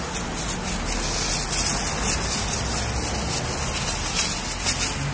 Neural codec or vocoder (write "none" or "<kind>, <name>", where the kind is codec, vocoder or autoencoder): none